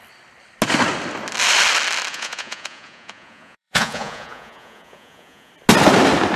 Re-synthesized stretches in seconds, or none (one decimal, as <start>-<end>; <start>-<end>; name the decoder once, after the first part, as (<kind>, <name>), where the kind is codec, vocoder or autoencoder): 2.1-5.5 (vocoder, Vocos)